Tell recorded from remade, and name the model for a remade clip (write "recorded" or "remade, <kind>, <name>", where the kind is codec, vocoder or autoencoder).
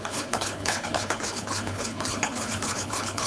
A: remade, codec, HILCodec